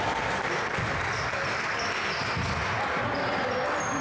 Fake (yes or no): no